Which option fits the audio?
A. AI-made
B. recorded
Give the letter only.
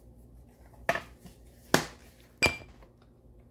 B